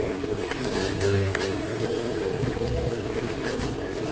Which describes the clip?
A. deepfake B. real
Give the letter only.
A